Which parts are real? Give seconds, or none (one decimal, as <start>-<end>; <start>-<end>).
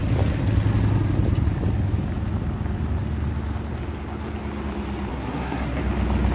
0.0-5.1; 5.8-6.3